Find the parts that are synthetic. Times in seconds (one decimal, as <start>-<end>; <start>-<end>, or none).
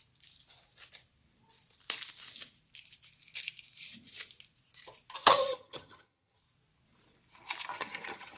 5.2-6.4; 7.7-8.4